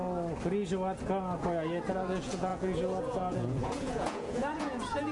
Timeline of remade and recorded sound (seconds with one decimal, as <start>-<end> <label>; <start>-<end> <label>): 0.0-1.9 recorded; 1.9-5.1 remade